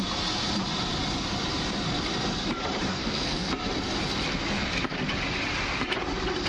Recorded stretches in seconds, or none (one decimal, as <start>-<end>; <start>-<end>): 0.0-2.9; 3.5-6.5